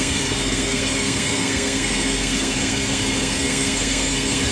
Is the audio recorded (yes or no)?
no